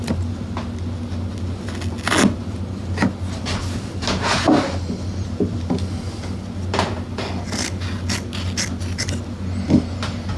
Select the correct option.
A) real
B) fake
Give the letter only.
A